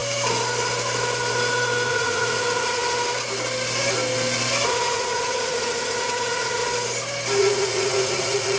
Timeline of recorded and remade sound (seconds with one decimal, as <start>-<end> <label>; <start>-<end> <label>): 0.0-1.9 recorded; 1.9-2.8 remade; 2.8-4.7 recorded; 4.7-6.6 remade; 6.6-7.4 recorded; 7.4-8.6 remade